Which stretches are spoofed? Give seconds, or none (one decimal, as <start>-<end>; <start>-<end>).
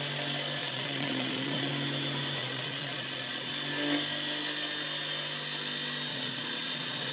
0.6-1.7; 2.4-3.5; 6.1-7.1